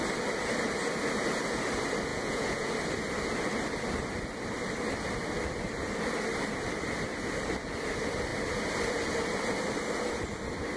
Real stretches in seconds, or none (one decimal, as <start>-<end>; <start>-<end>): 0.0-2.1; 2.7-10.8